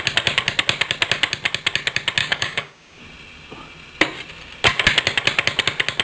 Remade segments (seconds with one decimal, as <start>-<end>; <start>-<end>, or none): 2.2-3.0